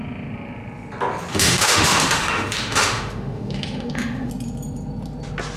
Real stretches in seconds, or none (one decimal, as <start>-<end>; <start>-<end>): 0.0-1.3; 4.3-5.6